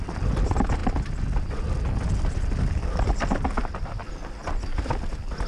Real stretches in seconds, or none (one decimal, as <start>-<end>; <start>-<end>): 0.0-5.5